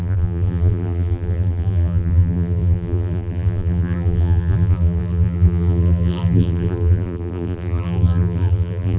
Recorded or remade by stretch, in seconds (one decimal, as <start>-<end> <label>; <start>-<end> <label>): 0.0-9.0 remade